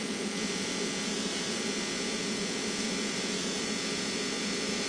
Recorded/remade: remade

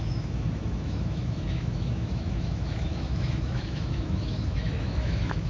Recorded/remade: remade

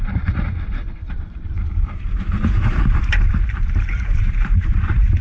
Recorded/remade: remade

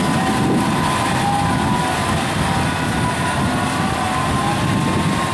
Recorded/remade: recorded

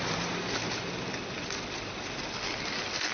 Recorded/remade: recorded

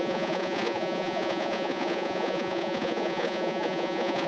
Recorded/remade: remade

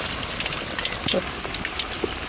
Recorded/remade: recorded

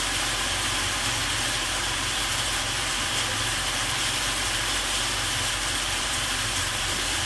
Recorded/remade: remade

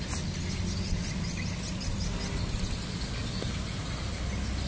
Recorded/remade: recorded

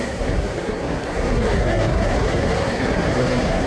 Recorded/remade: remade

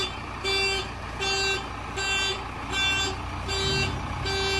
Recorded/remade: recorded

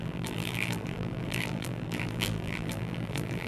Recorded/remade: remade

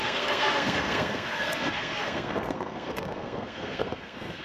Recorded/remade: remade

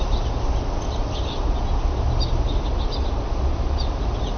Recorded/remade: recorded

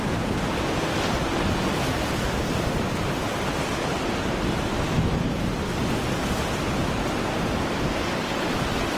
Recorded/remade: recorded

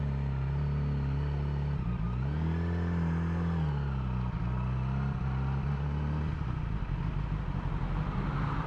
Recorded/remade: recorded